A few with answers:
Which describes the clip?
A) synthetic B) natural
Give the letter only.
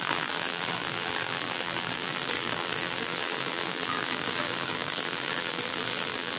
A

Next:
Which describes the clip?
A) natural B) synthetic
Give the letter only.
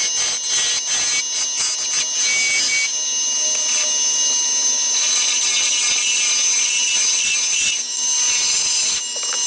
A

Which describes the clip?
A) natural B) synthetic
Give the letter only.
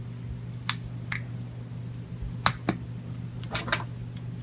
A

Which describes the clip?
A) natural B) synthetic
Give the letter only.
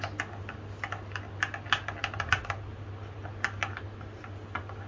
A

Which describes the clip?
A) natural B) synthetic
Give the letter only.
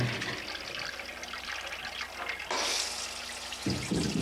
A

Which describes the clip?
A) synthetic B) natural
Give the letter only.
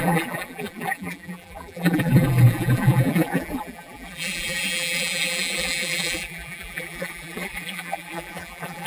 A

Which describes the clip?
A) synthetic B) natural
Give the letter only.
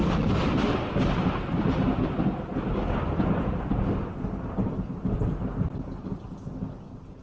B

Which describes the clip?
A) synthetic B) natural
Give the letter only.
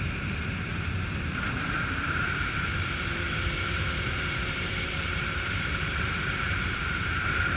A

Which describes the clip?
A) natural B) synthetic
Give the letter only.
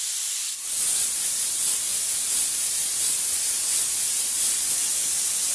A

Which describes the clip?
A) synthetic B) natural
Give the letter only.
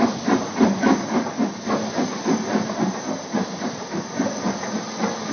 B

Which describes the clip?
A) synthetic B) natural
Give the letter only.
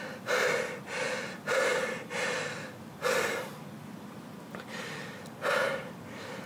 B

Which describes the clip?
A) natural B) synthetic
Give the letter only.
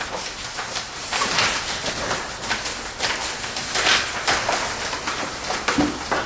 A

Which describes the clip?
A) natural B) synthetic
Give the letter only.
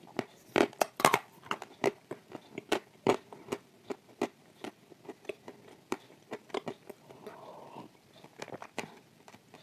B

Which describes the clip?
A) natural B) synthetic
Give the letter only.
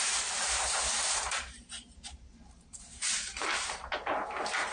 B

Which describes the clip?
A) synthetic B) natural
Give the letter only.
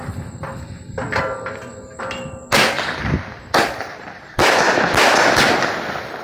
B